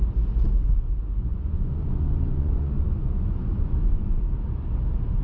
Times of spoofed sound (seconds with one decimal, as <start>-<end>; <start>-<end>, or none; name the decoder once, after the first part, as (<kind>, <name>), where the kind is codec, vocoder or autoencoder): 1.3-4.2 (vocoder, Vocos)